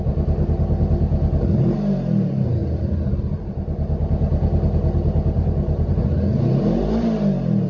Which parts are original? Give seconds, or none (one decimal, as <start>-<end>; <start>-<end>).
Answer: 0.0-7.7